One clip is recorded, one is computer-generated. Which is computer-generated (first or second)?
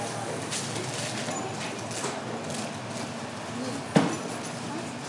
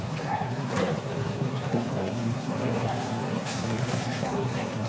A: second